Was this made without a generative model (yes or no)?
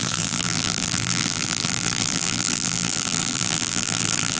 no